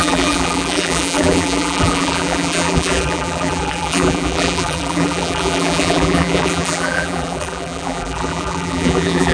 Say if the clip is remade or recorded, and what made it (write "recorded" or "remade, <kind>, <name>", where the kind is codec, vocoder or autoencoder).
remade, vocoder, BigVGAN v2